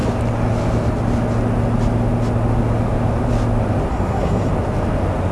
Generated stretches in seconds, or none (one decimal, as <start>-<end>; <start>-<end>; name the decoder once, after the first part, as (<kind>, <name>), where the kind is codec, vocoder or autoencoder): 3.9-4.5 (codec, SNAC)